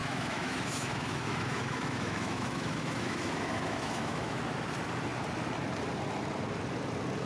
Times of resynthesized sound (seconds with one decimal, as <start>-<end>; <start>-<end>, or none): 0.0-4.4